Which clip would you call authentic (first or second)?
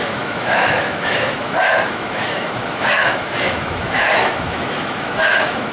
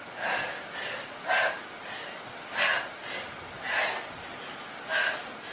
second